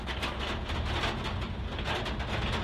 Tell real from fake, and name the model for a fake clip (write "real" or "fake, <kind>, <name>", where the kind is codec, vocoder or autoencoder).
real